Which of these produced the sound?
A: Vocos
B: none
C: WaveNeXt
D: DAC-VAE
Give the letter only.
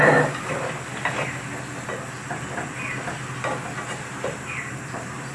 B